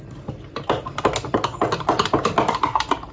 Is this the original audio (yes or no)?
yes